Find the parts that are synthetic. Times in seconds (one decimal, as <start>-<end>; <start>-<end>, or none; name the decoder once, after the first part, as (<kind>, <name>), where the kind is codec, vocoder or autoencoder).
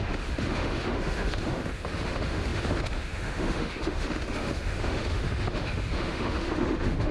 0.0-7.1 (autoencoder, DAC-VAE)